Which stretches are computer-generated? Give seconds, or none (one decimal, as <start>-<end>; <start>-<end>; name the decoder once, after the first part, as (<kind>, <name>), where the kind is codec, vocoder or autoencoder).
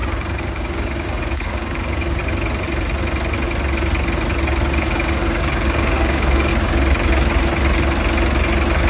0.0-2.2 (codec, DAC); 4.8-6.5